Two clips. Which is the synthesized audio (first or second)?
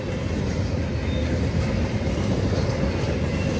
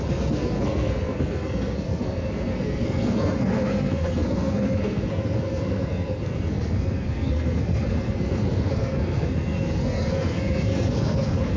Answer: second